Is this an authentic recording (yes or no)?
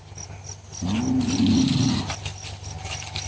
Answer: yes